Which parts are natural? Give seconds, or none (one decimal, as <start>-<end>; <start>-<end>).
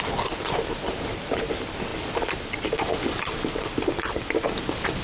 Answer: 0.0-5.0